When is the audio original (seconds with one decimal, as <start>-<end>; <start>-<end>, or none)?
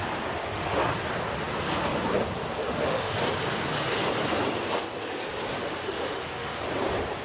0.0-0.4; 0.9-2.6; 3.1-5.6; 6.6-7.2